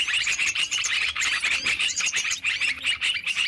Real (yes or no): no